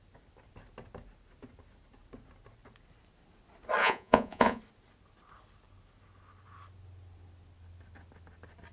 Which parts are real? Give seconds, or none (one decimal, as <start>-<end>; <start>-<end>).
0.0-3.8; 4.6-8.7